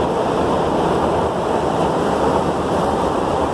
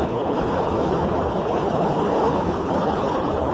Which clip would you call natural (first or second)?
first